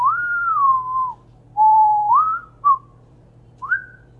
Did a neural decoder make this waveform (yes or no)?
yes